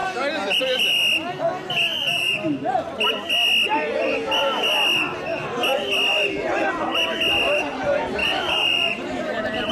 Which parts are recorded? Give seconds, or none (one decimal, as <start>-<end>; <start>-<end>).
0.0-8.2

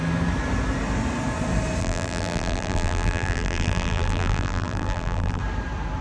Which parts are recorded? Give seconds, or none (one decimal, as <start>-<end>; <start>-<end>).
0.0-1.8; 5.4-6.0

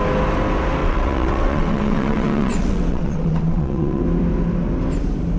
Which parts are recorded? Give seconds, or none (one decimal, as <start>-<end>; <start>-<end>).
0.0-0.8; 4.0-5.4

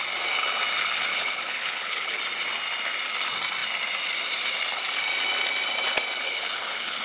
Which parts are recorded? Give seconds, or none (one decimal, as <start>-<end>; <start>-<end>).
0.0-1.1; 2.2-6.2